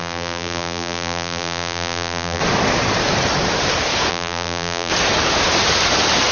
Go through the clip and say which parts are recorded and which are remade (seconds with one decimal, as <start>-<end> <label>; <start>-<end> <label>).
0.0-2.4 remade; 2.4-4.1 recorded; 4.1-4.9 remade; 4.9-6.3 recorded